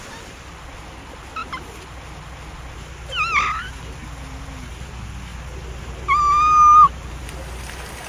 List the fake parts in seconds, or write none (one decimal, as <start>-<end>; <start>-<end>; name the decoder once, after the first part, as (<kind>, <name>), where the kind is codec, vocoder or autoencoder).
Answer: none